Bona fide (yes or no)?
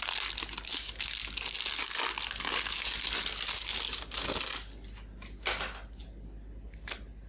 yes